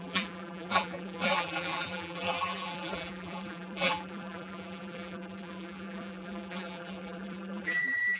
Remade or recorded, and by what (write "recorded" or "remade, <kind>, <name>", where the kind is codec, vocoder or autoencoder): remade, vocoder, BigVGAN v2